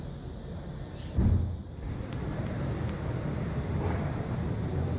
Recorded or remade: recorded